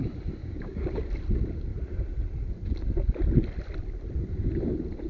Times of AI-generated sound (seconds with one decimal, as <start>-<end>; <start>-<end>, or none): 0.4-1.0